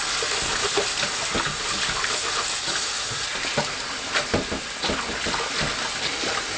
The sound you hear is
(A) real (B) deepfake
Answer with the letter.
A